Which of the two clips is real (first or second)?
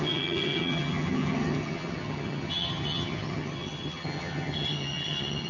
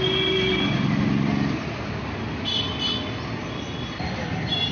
second